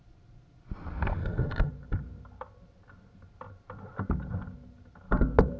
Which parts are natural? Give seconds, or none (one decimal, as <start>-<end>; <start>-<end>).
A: 0.0-1.2; 1.7-5.6